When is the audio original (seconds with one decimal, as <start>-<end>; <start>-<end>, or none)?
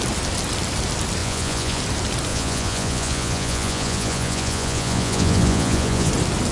0.0-1.2; 1.8-2.3; 6.1-6.5